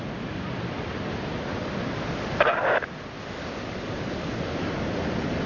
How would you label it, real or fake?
real